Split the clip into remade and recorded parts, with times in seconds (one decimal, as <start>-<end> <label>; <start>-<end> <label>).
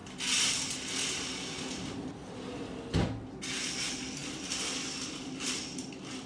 0.0-6.3 recorded